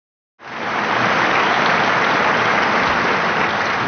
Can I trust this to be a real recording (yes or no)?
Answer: yes